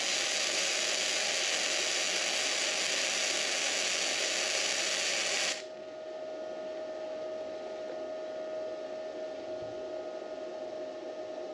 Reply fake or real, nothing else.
real